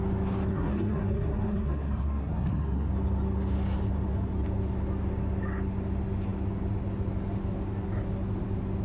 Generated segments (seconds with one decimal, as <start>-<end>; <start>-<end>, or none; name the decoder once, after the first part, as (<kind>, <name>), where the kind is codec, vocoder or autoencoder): 0.5-2.9 (codec, SNAC)